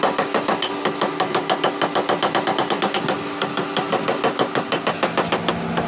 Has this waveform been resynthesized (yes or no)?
no